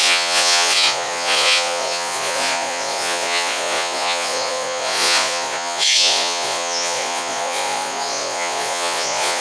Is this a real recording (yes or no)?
no